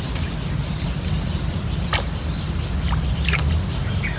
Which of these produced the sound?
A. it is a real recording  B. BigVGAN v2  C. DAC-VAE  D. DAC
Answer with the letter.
A